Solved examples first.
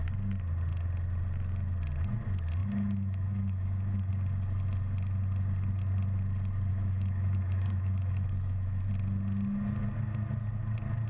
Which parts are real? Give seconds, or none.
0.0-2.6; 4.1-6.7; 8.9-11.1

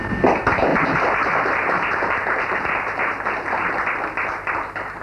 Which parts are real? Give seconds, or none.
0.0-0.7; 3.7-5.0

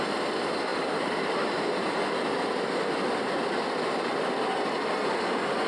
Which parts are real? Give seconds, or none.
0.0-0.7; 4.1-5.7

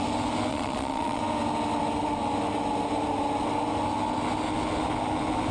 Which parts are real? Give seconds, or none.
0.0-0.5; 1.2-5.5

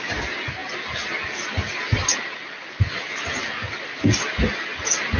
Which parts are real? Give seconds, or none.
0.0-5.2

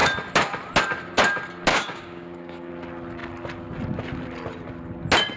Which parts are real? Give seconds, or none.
0.0-1.7; 2.7-5.4